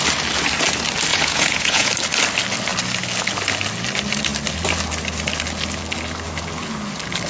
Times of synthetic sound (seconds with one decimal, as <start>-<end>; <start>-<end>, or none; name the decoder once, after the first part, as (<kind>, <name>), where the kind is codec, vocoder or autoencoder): 1.1-1.9 (vocoder, Vocos)